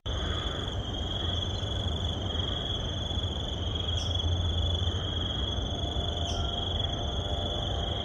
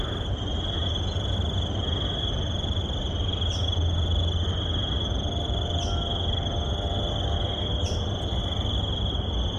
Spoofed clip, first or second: first